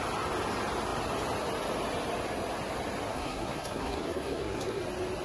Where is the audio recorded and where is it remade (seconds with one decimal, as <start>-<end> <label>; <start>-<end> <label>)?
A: 0.0-3.1 recorded; 3.1-4.8 remade; 4.8-5.2 recorded